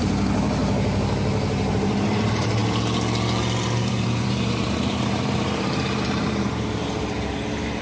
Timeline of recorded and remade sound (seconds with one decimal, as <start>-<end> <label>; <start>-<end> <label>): 0.0-0.6 remade; 0.6-1.7 recorded; 1.7-2.6 remade; 2.6-3.9 recorded; 3.9-7.8 remade